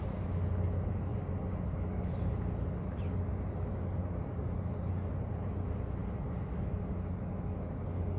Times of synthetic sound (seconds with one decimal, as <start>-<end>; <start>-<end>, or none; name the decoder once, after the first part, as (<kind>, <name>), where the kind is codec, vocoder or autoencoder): none